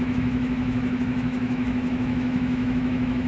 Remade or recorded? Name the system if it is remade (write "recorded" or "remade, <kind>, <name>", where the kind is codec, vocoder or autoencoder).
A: remade, autoencoder, DAC-VAE